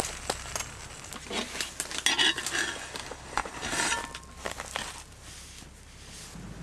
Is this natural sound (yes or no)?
yes